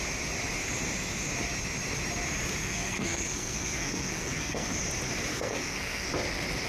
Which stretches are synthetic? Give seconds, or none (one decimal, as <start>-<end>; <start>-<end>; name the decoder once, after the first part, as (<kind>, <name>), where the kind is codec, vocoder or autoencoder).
2.6-4.8 (codec, SNAC); 5.3-6.1